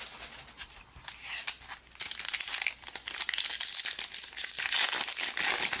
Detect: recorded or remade recorded